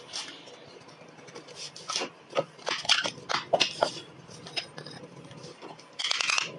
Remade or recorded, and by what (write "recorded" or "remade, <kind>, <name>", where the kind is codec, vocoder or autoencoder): recorded